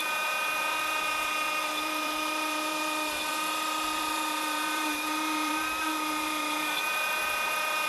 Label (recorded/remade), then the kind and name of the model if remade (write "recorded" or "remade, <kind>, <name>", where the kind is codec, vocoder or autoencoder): remade, vocoder, BigVGAN v2